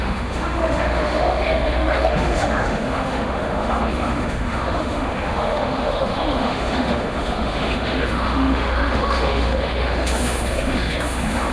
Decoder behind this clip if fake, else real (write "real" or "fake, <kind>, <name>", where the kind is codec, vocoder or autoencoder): fake, autoencoder, DAC-VAE